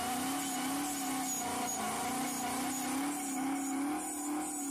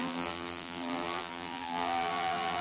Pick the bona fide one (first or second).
first